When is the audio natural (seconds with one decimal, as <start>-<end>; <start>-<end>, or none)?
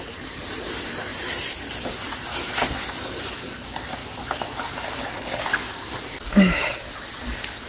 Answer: 0.0-7.7